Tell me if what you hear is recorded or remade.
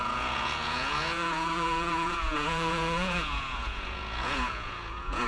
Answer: remade